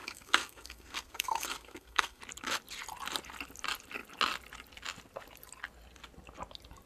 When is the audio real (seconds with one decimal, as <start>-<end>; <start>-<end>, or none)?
2.2-6.9